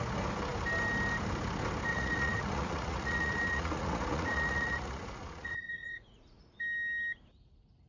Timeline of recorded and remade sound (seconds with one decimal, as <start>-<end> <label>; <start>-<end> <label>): 0.0-1.9 recorded; 1.9-6.4 remade; 6.4-7.9 recorded